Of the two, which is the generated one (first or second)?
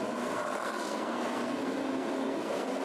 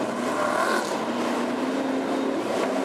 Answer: first